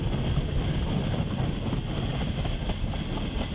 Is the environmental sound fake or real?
real